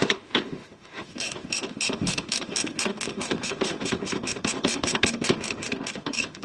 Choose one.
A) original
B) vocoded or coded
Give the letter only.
B